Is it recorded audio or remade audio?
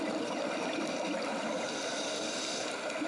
recorded